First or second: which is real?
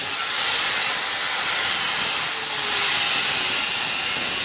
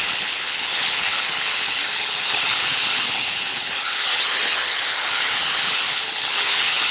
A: first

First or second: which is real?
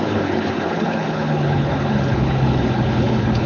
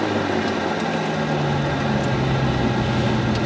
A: second